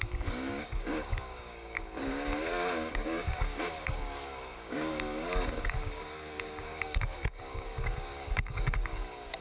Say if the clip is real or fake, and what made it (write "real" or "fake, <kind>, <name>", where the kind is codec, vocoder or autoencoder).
fake, codec, DAC